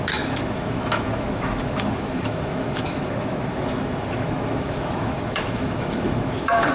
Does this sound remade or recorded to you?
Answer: remade